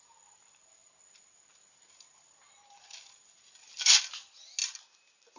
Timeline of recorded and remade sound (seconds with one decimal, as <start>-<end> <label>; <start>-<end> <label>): 0.0-5.4 recorded